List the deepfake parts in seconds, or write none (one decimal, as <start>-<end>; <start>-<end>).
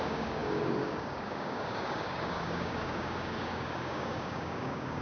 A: 0.0-5.0